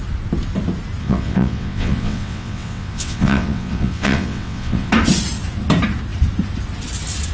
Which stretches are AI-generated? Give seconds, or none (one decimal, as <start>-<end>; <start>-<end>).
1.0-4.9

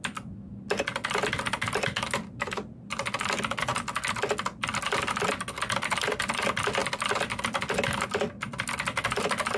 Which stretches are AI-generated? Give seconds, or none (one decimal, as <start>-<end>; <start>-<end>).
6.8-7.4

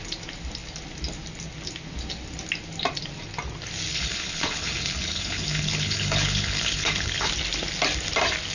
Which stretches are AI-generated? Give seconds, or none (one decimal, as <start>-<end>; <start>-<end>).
3.9-7.3

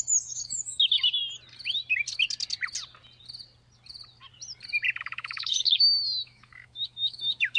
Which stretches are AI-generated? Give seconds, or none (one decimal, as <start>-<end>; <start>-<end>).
0.0-1.2; 5.0-7.6